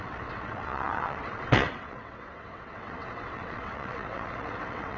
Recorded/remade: remade